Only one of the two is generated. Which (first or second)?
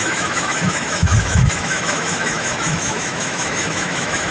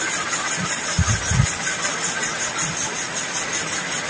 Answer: first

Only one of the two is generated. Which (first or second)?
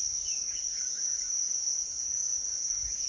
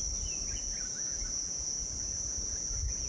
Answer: first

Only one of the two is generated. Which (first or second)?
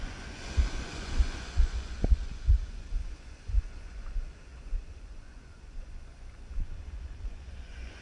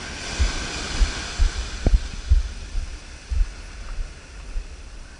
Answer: first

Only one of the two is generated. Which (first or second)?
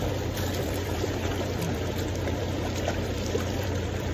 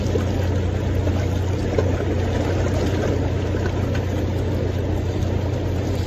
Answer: first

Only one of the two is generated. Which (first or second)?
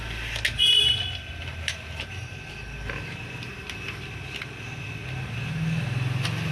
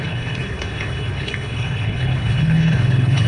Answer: second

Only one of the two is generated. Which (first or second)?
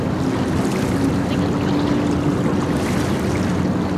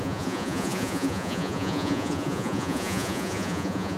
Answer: second